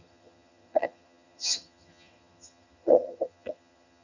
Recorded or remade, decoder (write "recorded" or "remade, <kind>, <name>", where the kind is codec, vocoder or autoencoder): remade, vocoder, HiFi-GAN